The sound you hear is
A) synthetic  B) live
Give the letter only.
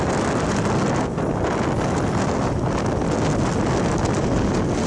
B